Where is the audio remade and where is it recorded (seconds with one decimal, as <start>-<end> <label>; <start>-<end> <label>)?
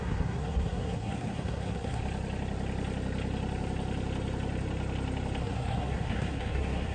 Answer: 0.0-2.0 remade; 2.0-5.4 recorded; 5.4-6.9 remade